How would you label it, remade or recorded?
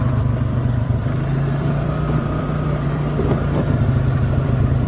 remade